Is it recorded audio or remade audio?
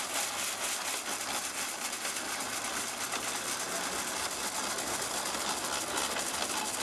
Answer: recorded